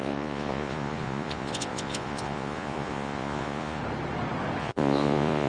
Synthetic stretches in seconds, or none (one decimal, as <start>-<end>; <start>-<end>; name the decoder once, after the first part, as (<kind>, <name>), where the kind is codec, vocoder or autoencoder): 0.0-3.8 (vocoder, Vocos); 4.6-5.5